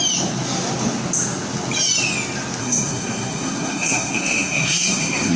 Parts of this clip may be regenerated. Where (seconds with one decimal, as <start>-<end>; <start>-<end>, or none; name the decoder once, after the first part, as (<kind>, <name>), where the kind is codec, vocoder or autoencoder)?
2.6-5.4 (codec, SNAC)